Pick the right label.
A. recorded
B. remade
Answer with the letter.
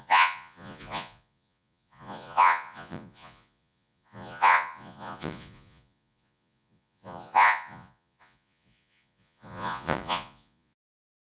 B